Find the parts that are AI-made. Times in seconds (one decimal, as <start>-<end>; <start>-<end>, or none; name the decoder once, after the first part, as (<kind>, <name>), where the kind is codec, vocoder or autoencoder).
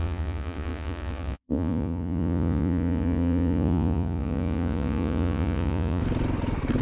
0.0-6.0 (vocoder, Vocos)